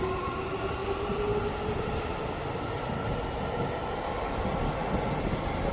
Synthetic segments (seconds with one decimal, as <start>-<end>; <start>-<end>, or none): none